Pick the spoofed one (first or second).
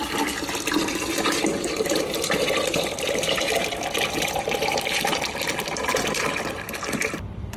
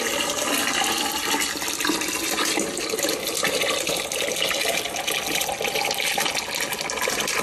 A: first